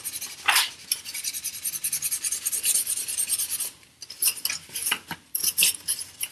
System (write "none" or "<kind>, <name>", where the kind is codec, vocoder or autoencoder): vocoder, BigVGAN v2